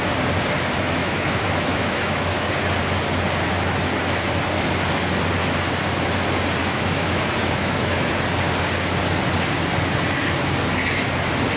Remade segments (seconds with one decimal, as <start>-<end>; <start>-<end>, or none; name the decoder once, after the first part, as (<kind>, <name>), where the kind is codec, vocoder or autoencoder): 1.0-2.5 (autoencoder, DAC-VAE); 6.6-8.1